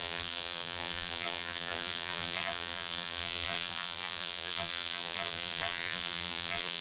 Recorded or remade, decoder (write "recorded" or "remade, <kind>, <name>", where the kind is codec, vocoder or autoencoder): remade, vocoder, BigVGAN v2